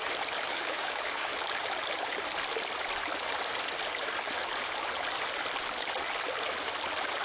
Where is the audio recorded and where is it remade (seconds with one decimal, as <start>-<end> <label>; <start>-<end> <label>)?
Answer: 0.0-0.5 recorded; 0.5-1.3 remade; 1.3-7.2 recorded